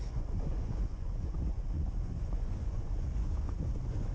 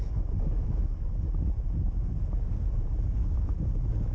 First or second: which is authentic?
second